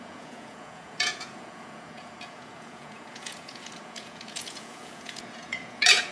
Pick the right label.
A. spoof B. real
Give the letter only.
A